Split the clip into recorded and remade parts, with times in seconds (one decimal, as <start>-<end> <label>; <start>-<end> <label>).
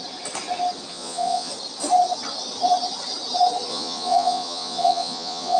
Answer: 0.0-0.9 recorded; 0.9-1.5 remade; 1.5-3.7 recorded; 3.7-5.6 remade